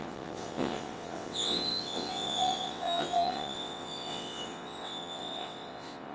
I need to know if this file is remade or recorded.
remade